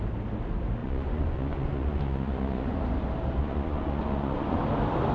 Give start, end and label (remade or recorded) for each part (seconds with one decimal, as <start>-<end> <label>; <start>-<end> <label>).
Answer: 0.0-0.8 recorded; 0.8-2.8 remade; 2.8-3.4 recorded; 3.4-4.6 remade; 4.6-5.1 recorded

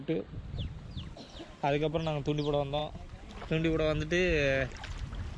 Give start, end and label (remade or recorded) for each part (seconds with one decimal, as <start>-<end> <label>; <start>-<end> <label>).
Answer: 0.0-5.4 recorded

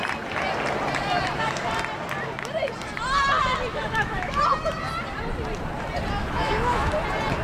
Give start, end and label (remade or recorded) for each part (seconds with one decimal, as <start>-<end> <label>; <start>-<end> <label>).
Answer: 0.0-3.7 recorded; 3.7-4.3 remade; 4.3-6.2 recorded; 6.2-6.9 remade; 6.9-7.4 recorded

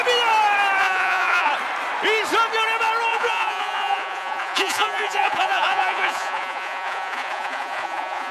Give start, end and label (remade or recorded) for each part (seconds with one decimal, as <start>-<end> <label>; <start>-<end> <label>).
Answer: 0.0-0.8 recorded; 0.8-1.5 remade; 1.5-3.1 recorded; 3.1-8.3 remade

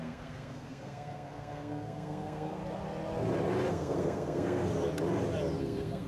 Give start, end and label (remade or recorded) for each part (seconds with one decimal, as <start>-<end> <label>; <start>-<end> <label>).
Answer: 0.0-2.6 remade; 2.6-3.7 recorded; 3.7-4.6 remade; 4.6-5.6 recorded; 5.6-6.1 remade

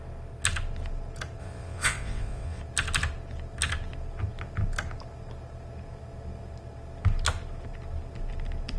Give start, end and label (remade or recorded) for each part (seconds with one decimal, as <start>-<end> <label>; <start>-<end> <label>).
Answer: 0.0-1.4 recorded; 1.4-2.6 remade; 2.6-8.8 recorded